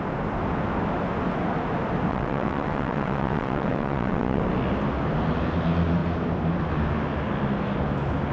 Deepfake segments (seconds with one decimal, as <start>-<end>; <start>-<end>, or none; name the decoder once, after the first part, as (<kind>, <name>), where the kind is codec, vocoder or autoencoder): 2.1-4.4 (vocoder, WaveNeXt)